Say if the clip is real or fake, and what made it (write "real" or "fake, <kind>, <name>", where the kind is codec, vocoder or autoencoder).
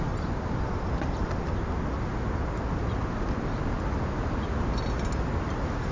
real